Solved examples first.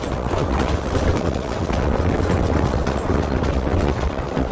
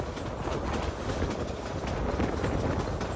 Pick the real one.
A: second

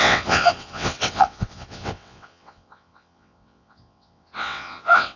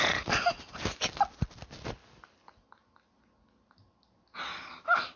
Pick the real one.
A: second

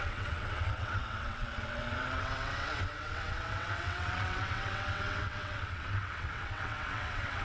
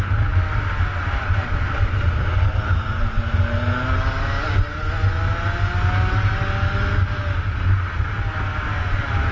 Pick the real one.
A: second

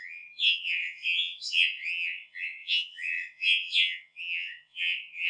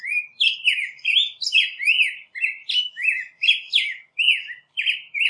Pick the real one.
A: second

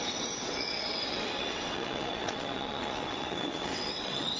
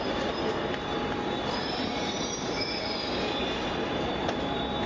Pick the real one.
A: second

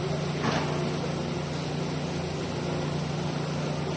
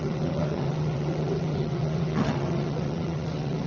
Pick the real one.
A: first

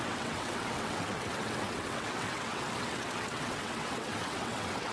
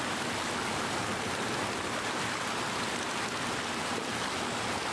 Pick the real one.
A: second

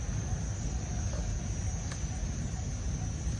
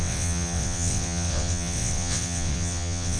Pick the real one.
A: first